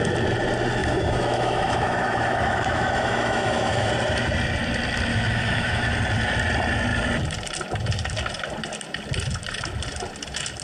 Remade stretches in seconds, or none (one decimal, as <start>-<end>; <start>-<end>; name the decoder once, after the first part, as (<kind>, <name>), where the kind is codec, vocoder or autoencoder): 0.8-3.9 (autoencoder, DAC-VAE); 5.1-5.9